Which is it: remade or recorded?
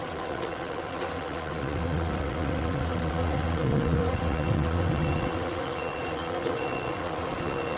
remade